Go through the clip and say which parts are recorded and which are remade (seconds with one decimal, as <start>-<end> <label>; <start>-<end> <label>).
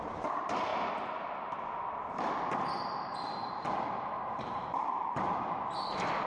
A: 0.0-3.1 recorded; 3.1-5.7 remade; 5.7-6.3 recorded